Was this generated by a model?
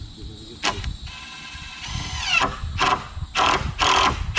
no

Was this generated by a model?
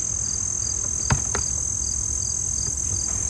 no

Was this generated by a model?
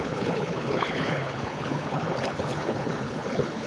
yes